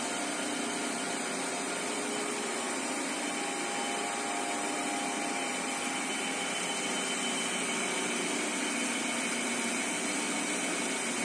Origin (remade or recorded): recorded